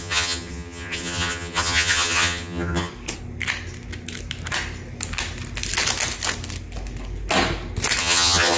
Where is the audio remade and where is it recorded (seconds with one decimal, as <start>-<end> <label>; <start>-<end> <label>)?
0.0-2.9 remade; 2.9-8.0 recorded; 8.0-8.6 remade